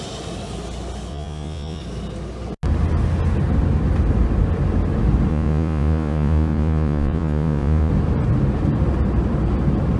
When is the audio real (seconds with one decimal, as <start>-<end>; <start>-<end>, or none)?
0.0-1.1; 1.8-5.3; 7.9-10.0